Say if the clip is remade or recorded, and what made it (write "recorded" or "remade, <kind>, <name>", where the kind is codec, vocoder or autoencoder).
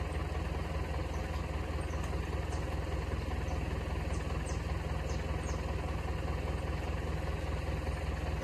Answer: recorded